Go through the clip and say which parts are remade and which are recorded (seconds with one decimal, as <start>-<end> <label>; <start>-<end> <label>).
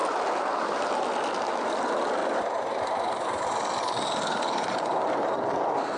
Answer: 0.0-6.0 recorded